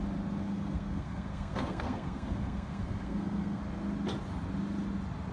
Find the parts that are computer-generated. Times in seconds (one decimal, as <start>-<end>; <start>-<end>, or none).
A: 0.4-3.6